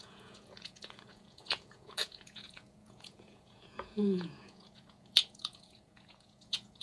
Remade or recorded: remade